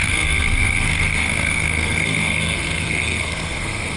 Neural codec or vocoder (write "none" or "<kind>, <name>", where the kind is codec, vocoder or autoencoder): codec, SNAC